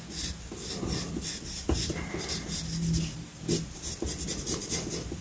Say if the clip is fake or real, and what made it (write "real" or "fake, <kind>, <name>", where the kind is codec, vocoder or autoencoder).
real